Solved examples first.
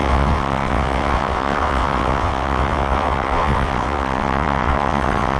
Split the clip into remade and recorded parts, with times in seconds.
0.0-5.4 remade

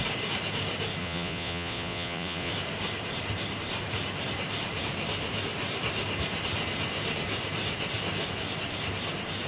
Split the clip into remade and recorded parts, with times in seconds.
0.0-1.0 recorded; 1.0-2.5 remade; 2.5-9.5 recorded